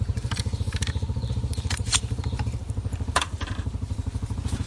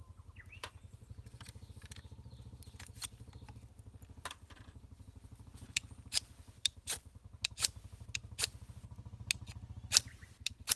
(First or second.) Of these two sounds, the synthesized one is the first